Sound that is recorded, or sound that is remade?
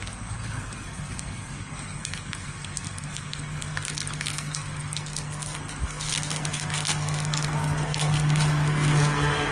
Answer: remade